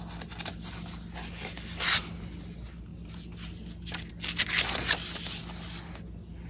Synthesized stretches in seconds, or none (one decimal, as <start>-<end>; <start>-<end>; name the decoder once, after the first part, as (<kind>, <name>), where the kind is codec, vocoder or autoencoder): none